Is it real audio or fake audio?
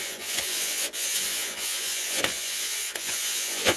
fake